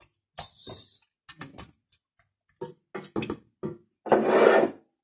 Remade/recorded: recorded